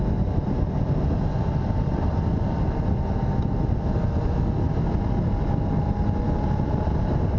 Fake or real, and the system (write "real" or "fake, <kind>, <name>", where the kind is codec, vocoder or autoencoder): real